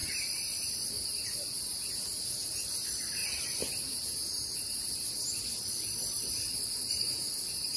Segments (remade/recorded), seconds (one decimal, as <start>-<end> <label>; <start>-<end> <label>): 0.0-1.6 remade; 1.6-6.0 recorded; 6.0-7.2 remade; 7.2-7.8 recorded